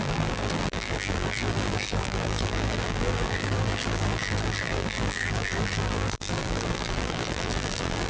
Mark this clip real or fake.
fake